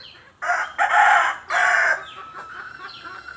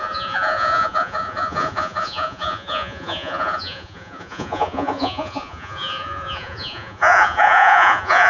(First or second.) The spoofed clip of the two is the second